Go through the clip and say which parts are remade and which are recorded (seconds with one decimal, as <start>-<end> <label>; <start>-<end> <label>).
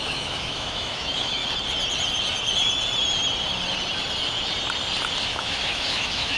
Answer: 0.0-1.4 remade; 1.4-5.2 recorded; 5.2-6.4 remade